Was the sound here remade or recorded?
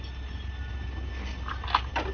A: recorded